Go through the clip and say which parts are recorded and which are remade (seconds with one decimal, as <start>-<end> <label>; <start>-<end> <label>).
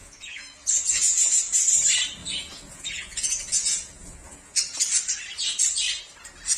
0.0-1.4 remade; 1.4-2.2 recorded; 2.2-4.6 remade; 4.6-6.6 recorded